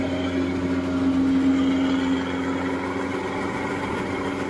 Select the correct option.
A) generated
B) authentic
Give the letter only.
B